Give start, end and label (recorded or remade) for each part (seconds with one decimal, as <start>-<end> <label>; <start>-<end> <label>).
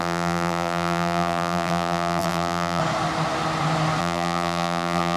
0.0-2.8 remade; 2.8-4.0 recorded; 4.0-5.2 remade